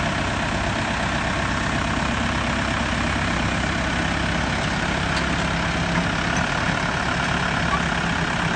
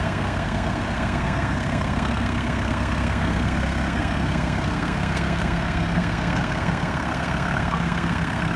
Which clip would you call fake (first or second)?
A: second